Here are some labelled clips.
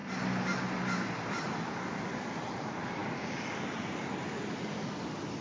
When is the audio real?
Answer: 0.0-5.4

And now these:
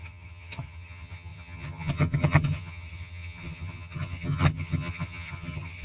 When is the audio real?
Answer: none

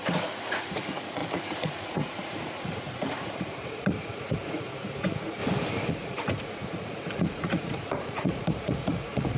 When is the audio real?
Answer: 5.4-5.9

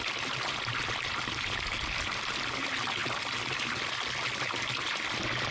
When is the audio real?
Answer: 0.0-5.5

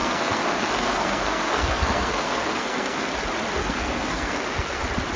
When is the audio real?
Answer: 3.1-3.6; 4.8-5.2

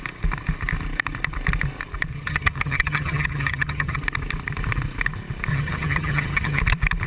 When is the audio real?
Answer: 0.0-2.1; 4.0-5.5; 6.6-7.1